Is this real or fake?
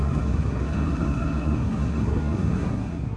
fake